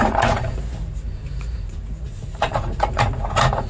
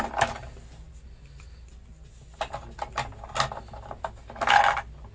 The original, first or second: second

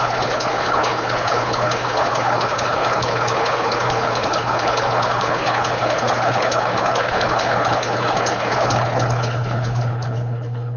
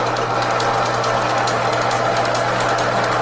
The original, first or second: second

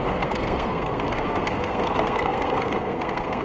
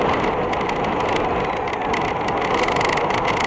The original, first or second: second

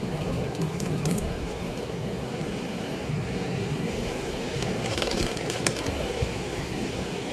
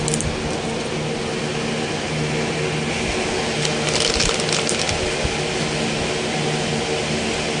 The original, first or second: second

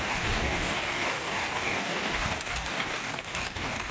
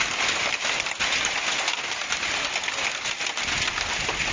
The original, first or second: second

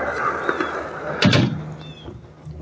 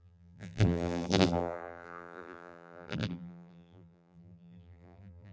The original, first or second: first